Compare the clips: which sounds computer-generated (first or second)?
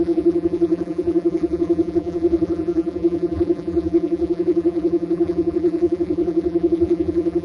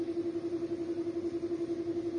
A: first